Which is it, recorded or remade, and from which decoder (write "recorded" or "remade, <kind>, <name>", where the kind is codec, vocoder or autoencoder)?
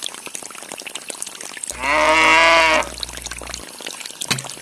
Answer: recorded